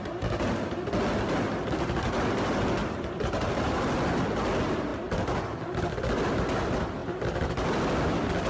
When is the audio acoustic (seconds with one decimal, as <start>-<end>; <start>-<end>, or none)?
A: 0.0-2.8; 3.8-8.5